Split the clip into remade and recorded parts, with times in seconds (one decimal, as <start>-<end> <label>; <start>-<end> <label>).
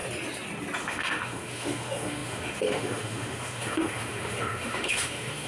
0.0-0.8 recorded; 0.8-5.5 remade